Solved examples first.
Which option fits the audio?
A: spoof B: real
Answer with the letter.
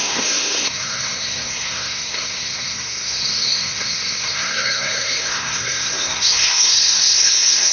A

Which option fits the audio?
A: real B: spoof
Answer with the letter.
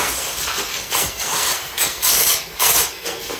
B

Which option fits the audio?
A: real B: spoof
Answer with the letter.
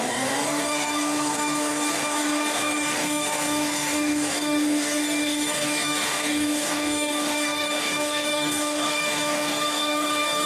B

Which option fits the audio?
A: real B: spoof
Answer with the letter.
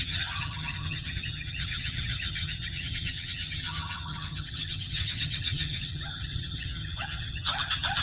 B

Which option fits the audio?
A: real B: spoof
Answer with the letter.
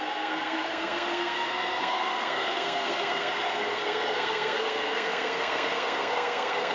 B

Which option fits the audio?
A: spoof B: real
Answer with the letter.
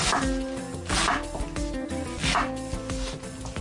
B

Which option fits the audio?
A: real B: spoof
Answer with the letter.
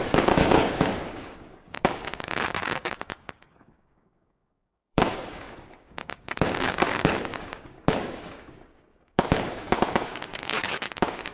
B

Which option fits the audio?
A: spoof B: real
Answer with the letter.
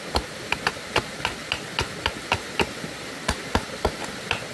B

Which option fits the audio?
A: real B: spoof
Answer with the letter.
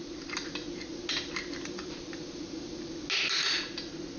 A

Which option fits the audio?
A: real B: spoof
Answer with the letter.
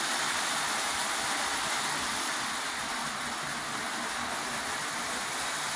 A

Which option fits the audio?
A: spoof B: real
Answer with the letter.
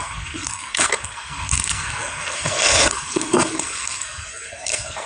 A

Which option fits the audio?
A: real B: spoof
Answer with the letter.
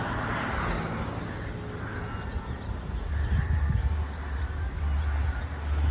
A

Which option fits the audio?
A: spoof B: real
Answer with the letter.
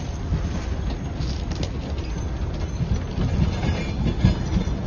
B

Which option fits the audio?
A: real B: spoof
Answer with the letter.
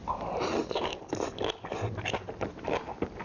A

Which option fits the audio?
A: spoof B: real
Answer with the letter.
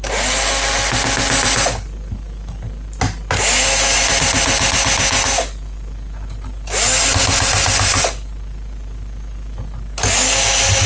B